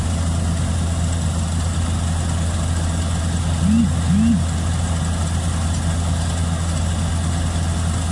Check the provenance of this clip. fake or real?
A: real